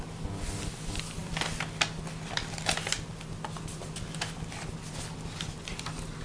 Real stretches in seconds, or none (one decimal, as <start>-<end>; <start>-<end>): 0.0-6.2